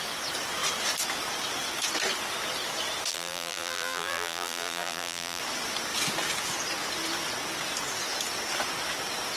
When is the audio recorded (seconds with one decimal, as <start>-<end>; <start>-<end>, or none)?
0.0-3.1; 5.4-9.4